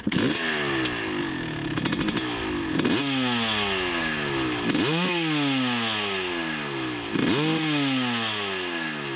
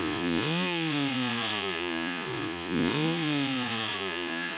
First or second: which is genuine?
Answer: first